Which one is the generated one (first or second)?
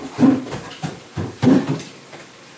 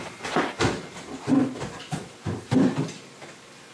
first